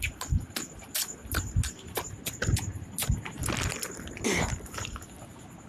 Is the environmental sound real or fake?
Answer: real